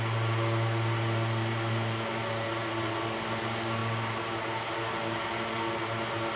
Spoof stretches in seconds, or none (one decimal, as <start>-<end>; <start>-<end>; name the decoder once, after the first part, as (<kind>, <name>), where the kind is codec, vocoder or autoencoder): none